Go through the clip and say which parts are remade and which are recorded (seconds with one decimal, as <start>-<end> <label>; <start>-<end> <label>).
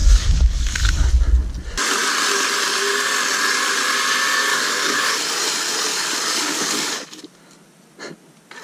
0.0-1.1 remade; 1.1-4.5 recorded; 4.5-5.1 remade; 5.1-5.9 recorded; 5.9-7.2 remade; 7.2-8.6 recorded